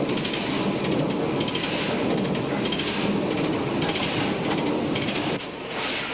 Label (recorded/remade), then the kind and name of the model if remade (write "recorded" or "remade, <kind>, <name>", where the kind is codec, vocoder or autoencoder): recorded